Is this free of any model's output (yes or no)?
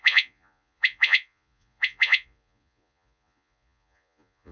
no